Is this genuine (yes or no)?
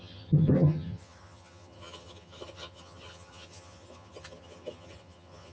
no